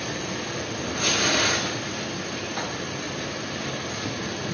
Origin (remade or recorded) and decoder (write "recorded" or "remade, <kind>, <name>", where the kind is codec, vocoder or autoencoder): recorded